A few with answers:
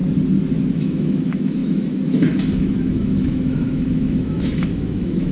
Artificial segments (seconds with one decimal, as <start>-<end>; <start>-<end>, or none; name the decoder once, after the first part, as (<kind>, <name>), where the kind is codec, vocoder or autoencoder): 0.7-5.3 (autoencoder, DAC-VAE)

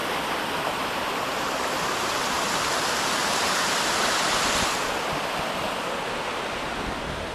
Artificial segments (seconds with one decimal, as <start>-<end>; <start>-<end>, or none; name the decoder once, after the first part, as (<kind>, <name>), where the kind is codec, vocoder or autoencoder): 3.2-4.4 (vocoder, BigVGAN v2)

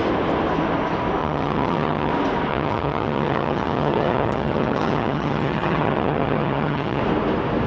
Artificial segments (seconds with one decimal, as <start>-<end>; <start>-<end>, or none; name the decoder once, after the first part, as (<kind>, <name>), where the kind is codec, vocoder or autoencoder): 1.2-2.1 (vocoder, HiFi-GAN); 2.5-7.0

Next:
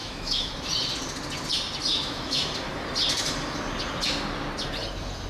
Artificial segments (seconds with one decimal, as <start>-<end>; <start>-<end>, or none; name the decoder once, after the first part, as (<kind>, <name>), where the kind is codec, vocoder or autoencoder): 0.0-0.5 (autoencoder, DAC-VAE); 1.9-2.5

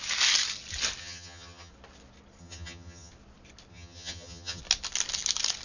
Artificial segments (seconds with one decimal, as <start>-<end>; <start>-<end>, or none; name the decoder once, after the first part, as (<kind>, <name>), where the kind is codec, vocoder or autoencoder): 1.0-1.7 (vocoder, HiFi-GAN); 2.4-3.1; 3.7-4.6

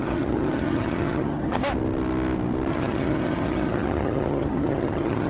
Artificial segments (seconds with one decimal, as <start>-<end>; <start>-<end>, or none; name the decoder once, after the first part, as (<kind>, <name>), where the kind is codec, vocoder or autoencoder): 0.0-1.6 (vocoder, HiFi-GAN); 2.7-5.3